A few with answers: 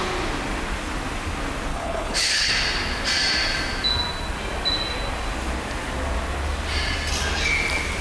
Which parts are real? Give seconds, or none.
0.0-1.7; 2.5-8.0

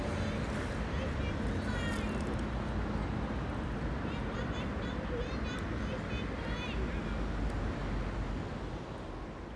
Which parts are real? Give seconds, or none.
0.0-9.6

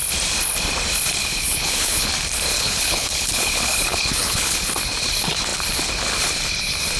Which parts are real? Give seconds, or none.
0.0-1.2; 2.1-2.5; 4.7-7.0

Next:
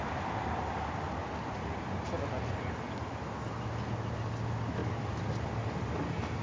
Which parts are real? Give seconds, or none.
0.0-6.4